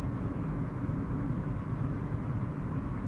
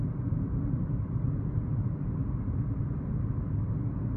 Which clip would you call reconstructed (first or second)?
first